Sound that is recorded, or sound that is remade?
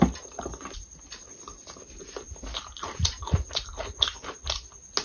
recorded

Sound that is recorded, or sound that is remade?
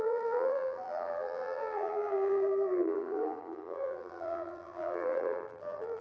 remade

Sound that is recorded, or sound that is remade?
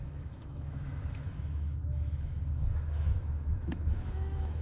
remade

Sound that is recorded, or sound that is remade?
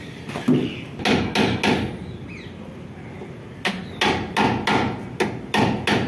recorded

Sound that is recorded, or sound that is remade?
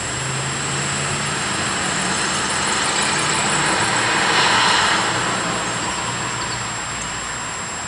recorded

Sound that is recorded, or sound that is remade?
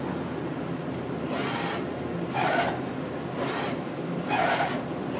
recorded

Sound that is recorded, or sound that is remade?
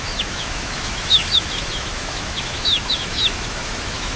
remade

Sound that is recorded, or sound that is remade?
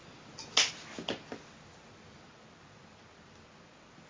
recorded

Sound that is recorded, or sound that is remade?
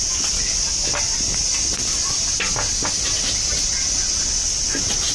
recorded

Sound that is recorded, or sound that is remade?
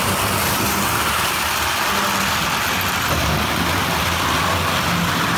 recorded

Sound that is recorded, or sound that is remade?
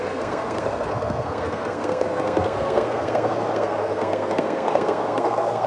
remade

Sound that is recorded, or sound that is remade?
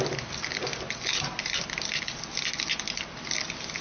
recorded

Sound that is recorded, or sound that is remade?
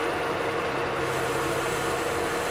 recorded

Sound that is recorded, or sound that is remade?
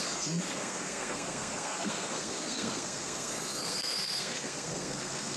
remade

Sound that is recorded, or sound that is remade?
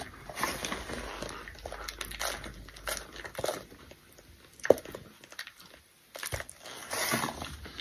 recorded